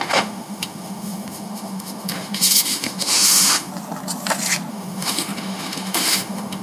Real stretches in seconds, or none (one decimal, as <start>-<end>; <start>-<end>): 3.7-4.7